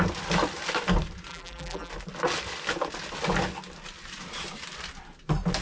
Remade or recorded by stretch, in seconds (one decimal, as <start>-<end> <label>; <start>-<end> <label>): 0.0-1.3 recorded; 1.3-1.9 remade; 1.9-5.6 recorded